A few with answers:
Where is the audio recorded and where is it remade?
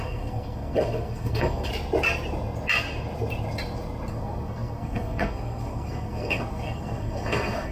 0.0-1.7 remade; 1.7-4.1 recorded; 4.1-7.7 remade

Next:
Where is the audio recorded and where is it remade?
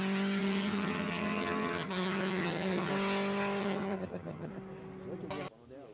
0.0-0.4 recorded; 0.4-2.9 remade; 2.9-3.6 recorded; 3.6-4.5 remade; 4.5-5.9 recorded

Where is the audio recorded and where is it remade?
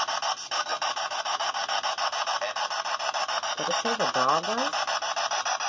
0.0-0.7 recorded; 0.7-3.7 remade; 3.7-5.7 recorded